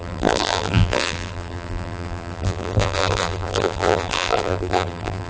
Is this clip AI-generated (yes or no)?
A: yes